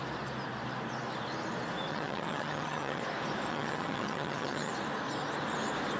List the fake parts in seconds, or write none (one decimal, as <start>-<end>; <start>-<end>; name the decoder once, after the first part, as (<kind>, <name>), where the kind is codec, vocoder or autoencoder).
1.9-3.0 (vocoder, HiFi-GAN); 3.5-4.7